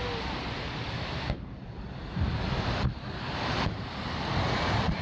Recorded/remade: recorded